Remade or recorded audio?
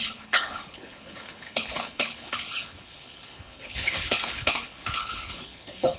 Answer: remade